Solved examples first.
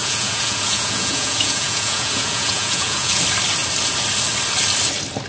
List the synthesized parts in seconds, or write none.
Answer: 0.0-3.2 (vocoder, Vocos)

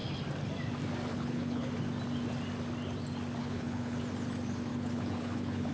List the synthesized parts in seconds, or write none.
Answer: 1.1-1.7 (codec, HILCodec); 3.4-4.0; 4.7-5.7

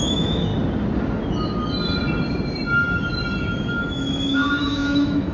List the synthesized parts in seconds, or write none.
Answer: 0.0-0.5 (autoencoder, DAC-VAE); 3.4-5.3

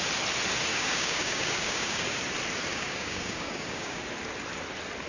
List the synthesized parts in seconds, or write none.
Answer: 0.7-2.2 (codec, DAC); 2.7-4.0

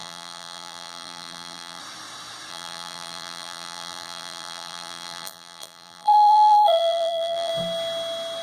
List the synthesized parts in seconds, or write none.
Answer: 0.0-1.8 (vocoder, BigVGAN v2); 2.5-7.5

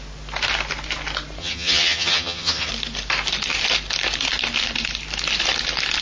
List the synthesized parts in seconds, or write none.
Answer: 1.4-2.7 (vocoder, HiFi-GAN)

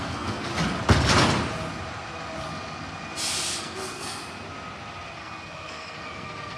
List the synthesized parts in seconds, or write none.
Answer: 0.0-0.5 (codec, SNAC); 3.6-4.2; 5.2-6.6